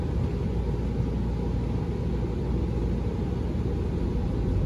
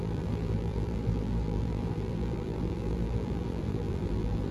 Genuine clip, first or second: first